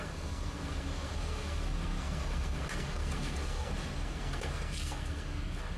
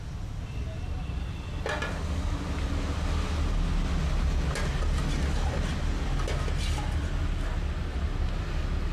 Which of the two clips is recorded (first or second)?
second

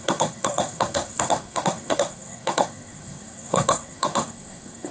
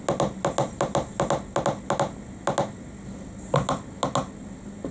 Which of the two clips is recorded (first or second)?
second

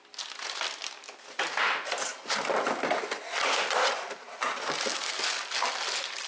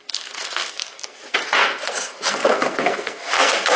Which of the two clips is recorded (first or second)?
first